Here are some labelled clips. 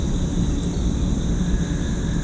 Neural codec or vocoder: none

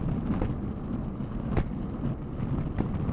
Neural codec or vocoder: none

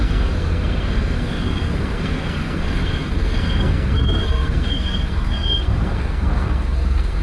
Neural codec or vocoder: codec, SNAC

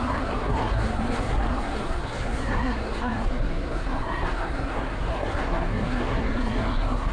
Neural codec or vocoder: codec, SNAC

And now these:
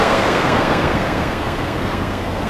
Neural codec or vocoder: codec, SNAC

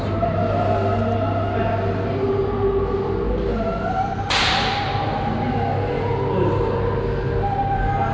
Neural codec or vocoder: none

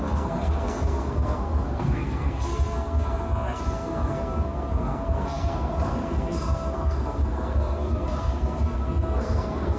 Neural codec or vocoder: codec, SNAC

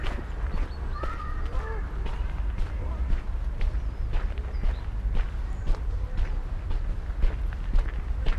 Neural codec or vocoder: none